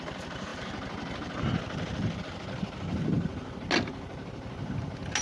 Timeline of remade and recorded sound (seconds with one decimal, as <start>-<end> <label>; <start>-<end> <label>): 0.0-5.2 recorded

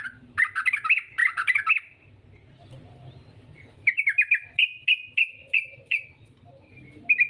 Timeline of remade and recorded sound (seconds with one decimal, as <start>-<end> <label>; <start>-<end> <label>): 0.0-1.2 recorded; 1.2-1.7 remade; 1.7-5.4 recorded; 5.4-6.0 remade; 6.0-7.3 recorded

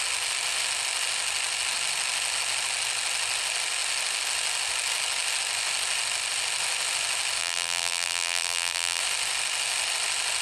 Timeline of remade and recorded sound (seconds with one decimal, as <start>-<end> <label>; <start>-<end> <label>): 0.0-7.4 recorded; 7.4-9.0 remade; 9.0-10.4 recorded

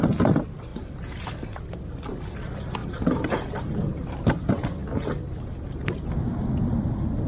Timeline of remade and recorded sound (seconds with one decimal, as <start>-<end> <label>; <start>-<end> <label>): 0.0-2.8 recorded; 2.8-3.3 remade; 3.3-7.3 recorded

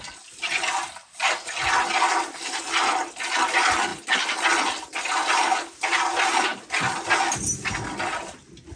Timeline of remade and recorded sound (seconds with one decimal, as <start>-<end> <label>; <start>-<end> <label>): 0.0-8.8 recorded

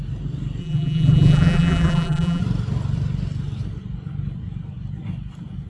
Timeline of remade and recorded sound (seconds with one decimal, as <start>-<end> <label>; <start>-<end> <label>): 0.0-0.6 recorded; 0.6-2.4 remade; 2.4-5.7 recorded

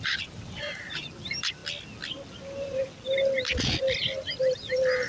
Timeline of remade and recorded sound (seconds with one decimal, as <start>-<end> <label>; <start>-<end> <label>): 0.0-1.6 remade; 1.6-4.4 recorded; 4.4-5.1 remade

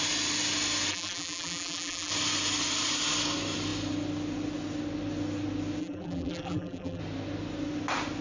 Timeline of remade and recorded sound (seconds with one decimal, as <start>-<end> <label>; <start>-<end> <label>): 0.0-0.9 recorded; 0.9-2.1 remade; 2.1-5.8 recorded; 5.8-7.0 remade; 7.0-8.2 recorded